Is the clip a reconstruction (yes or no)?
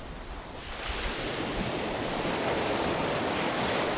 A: no